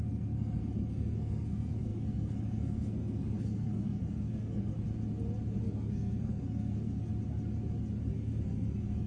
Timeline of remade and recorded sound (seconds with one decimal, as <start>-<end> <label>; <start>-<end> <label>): 0.0-4.7 remade; 4.7-5.6 recorded; 5.6-7.1 remade; 7.1-8.1 recorded; 8.1-9.1 remade